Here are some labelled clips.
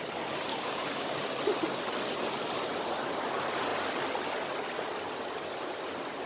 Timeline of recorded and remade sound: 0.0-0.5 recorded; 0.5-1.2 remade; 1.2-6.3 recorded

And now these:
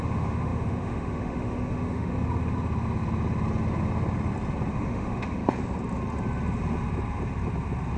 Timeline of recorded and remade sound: 0.0-2.1 remade; 2.1-4.7 recorded; 4.7-5.4 remade; 5.4-8.0 recorded

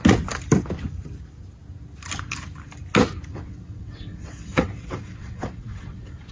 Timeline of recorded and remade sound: 0.0-3.3 recorded; 3.3-6.3 remade

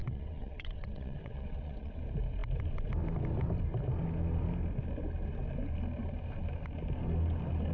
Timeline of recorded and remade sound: 0.0-1.9 remade; 1.9-7.7 recorded

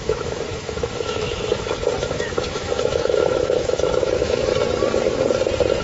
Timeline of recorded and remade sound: 0.0-4.5 remade; 4.5-5.8 recorded

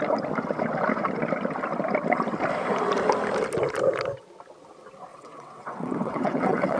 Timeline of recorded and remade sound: 0.0-5.1 recorded; 5.1-6.8 remade

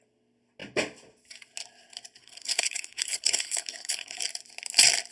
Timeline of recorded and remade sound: 0.0-2.2 recorded; 2.2-4.2 remade; 4.2-5.1 recorded